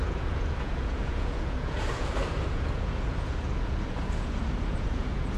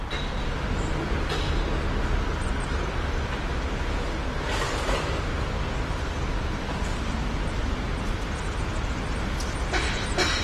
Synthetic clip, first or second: first